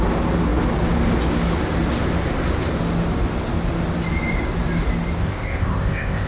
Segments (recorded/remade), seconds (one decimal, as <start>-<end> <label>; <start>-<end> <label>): 0.0-5.2 recorded; 5.2-6.3 remade